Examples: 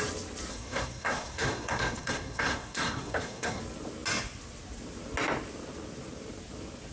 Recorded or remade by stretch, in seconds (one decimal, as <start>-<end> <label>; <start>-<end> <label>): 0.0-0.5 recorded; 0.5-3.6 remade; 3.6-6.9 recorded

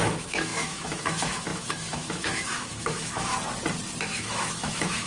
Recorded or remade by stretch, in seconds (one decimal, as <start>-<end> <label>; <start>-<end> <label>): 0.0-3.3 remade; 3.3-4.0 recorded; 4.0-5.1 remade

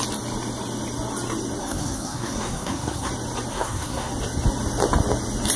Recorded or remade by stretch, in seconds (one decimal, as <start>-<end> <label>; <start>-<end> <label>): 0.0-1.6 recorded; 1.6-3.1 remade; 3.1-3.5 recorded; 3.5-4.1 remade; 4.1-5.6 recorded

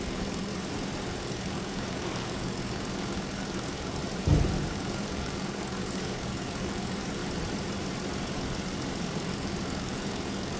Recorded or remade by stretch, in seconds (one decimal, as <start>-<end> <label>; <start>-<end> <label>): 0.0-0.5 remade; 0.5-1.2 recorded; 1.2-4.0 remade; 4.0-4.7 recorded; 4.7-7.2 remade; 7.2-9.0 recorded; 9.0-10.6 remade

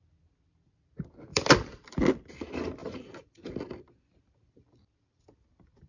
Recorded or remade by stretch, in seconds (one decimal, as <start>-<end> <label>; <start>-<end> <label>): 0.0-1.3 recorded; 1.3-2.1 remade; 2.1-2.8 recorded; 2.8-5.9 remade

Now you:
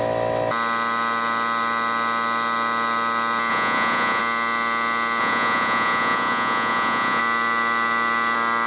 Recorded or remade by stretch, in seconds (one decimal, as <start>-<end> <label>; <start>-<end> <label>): 0.0-3.5 recorded; 3.5-4.2 remade; 4.2-5.2 recorded; 5.2-7.2 remade; 7.2-8.7 recorded